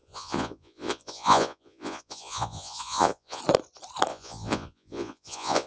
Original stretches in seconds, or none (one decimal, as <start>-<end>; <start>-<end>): 3.4-4.1